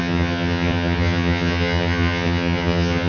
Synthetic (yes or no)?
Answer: yes